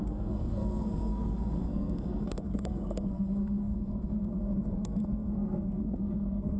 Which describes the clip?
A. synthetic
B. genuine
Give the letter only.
A